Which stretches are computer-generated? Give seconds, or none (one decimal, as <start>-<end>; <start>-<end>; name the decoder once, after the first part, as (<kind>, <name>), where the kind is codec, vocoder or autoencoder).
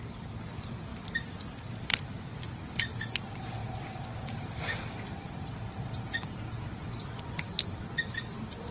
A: none